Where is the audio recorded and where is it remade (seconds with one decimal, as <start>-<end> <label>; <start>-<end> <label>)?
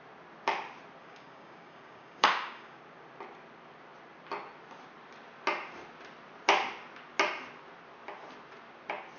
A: 0.0-1.0 recorded; 1.0-2.8 remade; 2.8-9.2 recorded